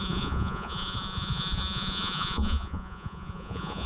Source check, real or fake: fake